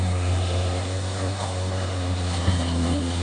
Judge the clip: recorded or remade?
remade